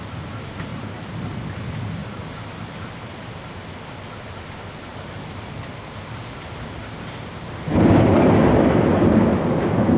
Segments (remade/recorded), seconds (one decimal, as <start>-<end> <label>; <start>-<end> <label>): 0.0-0.7 recorded; 0.7-1.5 remade; 1.5-4.9 recorded; 4.9-6.2 remade; 6.2-10.0 recorded